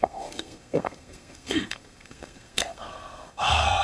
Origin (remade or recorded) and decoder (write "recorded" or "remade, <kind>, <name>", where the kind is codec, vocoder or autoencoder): remade, codec, SNAC